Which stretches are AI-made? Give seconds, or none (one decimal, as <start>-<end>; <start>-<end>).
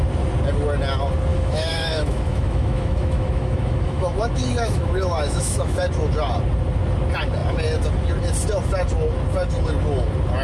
1.3-5.8